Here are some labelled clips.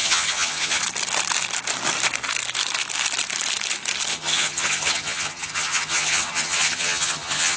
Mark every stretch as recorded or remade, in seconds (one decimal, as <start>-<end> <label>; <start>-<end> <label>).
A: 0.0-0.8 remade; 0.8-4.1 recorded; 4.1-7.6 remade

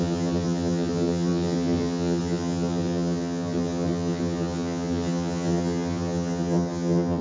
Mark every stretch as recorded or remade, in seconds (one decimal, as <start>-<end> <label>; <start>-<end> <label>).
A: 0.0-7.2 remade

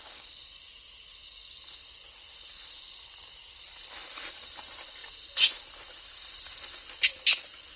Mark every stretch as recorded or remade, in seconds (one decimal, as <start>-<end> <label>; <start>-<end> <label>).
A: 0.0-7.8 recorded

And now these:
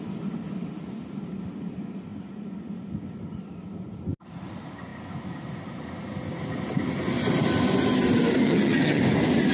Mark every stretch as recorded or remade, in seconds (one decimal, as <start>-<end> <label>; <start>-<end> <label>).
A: 0.0-8.4 recorded; 8.4-9.0 remade; 9.0-9.5 recorded

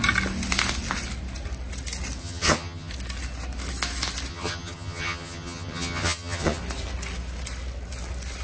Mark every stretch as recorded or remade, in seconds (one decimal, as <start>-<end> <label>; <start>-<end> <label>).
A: 0.0-2.2 recorded; 2.2-2.9 remade; 2.9-4.3 recorded; 4.3-6.6 remade; 6.6-8.4 recorded

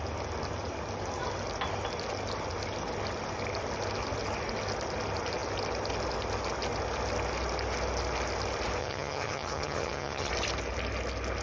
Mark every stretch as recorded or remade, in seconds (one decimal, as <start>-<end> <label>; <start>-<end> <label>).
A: 0.0-8.8 recorded; 8.8-10.3 remade; 10.3-11.4 recorded

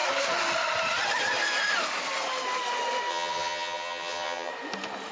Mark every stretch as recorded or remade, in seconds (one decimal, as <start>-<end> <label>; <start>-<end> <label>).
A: 0.0-3.1 recorded; 3.1-4.5 remade; 4.5-5.1 recorded

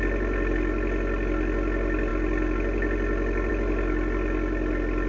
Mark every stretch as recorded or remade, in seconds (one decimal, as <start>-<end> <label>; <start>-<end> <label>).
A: 0.0-5.1 recorded